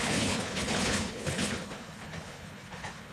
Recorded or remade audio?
remade